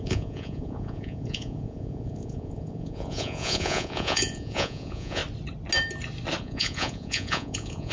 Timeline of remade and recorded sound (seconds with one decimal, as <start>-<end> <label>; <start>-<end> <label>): 0.0-5.2 remade; 5.2-6.4 recorded; 6.4-7.9 remade